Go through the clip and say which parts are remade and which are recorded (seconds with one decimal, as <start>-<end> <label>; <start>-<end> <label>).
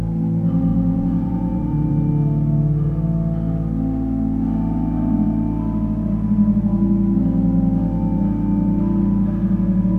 0.0-0.7 recorded; 0.7-1.9 remade; 1.9-10.0 recorded